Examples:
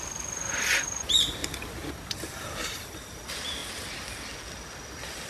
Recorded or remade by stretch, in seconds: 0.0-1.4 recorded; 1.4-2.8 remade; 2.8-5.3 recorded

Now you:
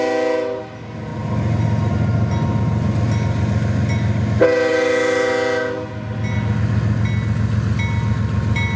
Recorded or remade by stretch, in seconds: 0.0-1.1 recorded; 1.1-1.9 remade; 1.9-4.7 recorded; 4.7-5.3 remade; 5.3-8.8 recorded

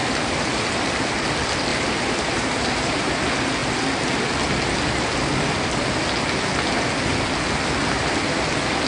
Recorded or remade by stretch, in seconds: 0.0-0.7 remade; 0.7-1.7 recorded; 1.7-3.1 remade; 3.1-8.9 recorded

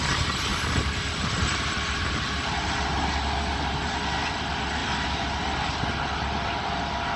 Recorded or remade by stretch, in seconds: 0.0-0.5 recorded; 0.5-2.5 remade; 2.5-4.8 recorded; 4.8-5.7 remade; 5.7-7.2 recorded

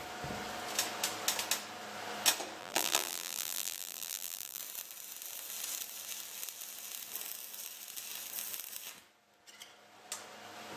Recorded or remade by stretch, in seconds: 0.0-2.6 recorded; 2.6-4.6 remade; 4.6-10.8 recorded

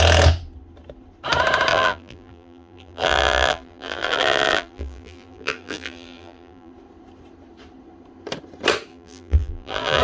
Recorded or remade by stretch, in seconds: 0.0-1.7 recorded; 1.7-6.7 remade; 6.7-8.9 recorded; 8.9-10.0 remade

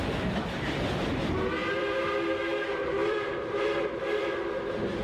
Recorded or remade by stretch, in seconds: 0.0-1.6 recorded; 1.6-2.4 remade; 2.4-3.0 recorded; 3.0-4.3 remade; 4.3-5.0 recorded

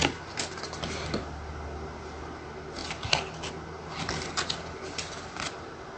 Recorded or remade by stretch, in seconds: 0.0-6.0 recorded